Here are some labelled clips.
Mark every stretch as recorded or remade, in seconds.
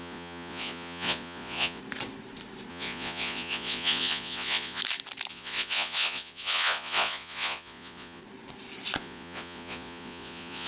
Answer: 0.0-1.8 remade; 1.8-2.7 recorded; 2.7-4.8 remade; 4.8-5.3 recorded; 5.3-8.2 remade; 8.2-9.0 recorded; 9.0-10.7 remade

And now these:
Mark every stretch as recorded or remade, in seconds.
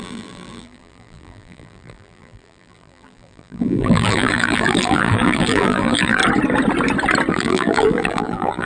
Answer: 0.0-6.2 remade; 6.2-7.3 recorded; 7.3-8.7 remade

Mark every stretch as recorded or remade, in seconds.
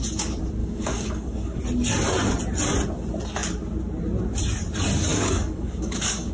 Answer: 0.0-0.6 recorded; 0.6-1.6 remade; 1.6-5.1 recorded; 5.1-6.3 remade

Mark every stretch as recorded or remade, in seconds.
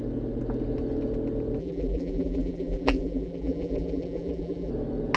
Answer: 0.0-1.6 recorded; 1.6-4.7 remade; 4.7-5.2 recorded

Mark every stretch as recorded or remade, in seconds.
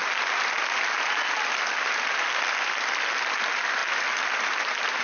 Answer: 0.0-5.0 recorded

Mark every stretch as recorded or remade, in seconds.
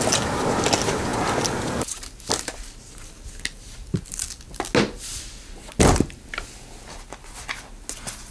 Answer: 0.0-8.3 recorded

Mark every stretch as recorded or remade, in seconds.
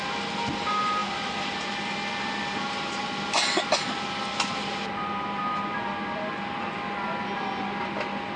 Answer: 0.0-8.4 recorded